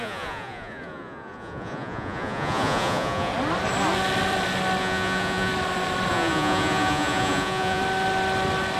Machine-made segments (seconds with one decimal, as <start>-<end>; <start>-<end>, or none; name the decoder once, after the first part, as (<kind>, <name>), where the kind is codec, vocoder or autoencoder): 0.0-3.3 (vocoder, Vocos); 4.8-5.5; 6.1-7.8